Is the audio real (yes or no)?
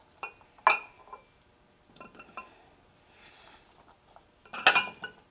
yes